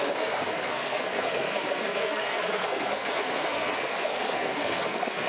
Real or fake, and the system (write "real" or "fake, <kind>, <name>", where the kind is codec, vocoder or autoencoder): fake, codec, SNAC